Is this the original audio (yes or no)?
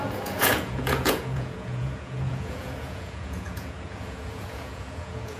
no